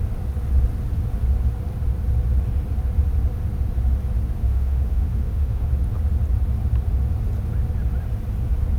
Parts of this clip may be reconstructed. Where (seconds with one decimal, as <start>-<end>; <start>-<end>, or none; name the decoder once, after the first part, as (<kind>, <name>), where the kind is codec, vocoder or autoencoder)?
4.4-5.7 (autoencoder, DAC-VAE)